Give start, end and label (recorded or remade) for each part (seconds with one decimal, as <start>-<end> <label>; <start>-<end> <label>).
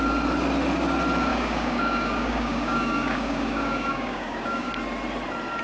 0.0-1.3 recorded; 1.3-4.7 remade; 4.7-5.6 recorded